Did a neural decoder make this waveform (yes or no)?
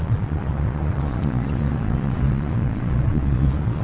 yes